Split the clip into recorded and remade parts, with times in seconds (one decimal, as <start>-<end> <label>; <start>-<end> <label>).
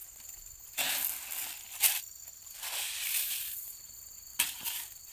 0.0-2.4 recorded; 2.4-3.8 remade; 3.8-4.3 recorded; 4.3-5.1 remade